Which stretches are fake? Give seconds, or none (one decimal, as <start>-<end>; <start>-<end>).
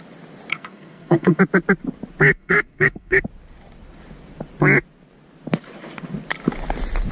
0.5-1.4; 2.3-3.2